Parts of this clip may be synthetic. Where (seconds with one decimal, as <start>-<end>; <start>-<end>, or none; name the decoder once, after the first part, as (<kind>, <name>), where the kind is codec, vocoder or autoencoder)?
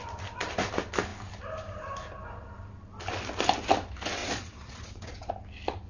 4.2-5.3 (vocoder, Vocos)